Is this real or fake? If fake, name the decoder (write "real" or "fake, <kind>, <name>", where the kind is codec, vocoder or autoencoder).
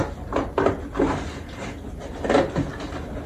real